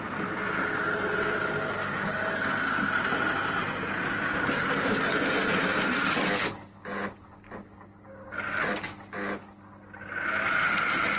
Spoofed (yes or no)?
no